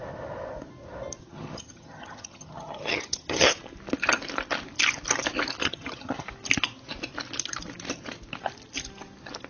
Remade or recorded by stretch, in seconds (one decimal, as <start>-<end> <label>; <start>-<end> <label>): 0.0-1.2 recorded; 1.2-3.5 remade; 3.5-5.6 recorded; 5.6-6.3 remade; 6.3-9.5 recorded